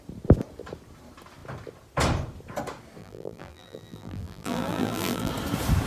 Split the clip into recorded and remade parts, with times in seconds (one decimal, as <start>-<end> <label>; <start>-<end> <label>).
0.0-3.0 recorded; 3.0-5.3 remade; 5.3-5.9 recorded